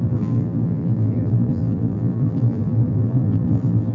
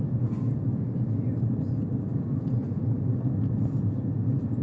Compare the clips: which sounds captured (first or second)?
second